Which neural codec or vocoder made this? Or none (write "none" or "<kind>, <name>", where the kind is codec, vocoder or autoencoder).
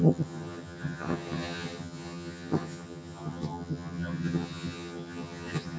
vocoder, HiFi-GAN